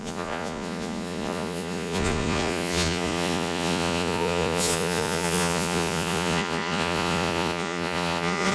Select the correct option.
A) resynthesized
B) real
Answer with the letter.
A